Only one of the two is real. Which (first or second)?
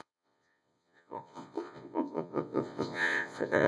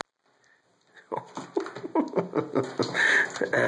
second